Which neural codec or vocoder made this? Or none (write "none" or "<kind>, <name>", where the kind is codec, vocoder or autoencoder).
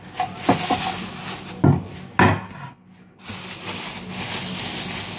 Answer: none